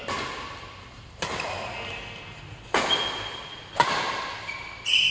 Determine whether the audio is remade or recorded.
recorded